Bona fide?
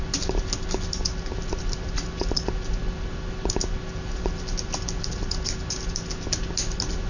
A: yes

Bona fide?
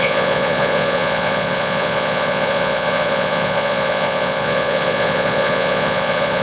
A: no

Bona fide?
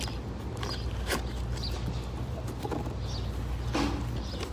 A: yes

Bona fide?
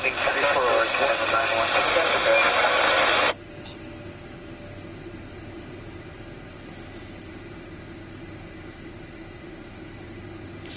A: yes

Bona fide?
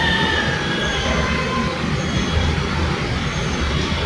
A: no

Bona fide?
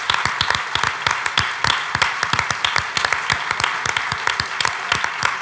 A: yes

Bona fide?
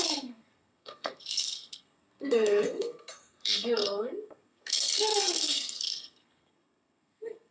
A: no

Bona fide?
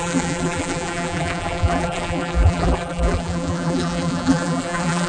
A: no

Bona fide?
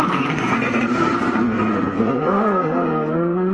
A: no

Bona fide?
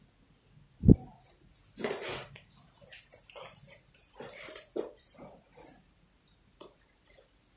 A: yes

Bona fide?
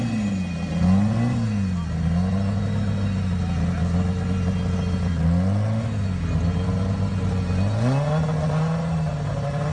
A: yes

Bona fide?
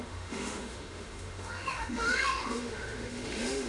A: no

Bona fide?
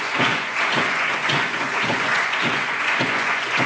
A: no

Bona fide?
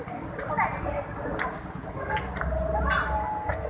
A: yes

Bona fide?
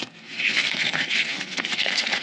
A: no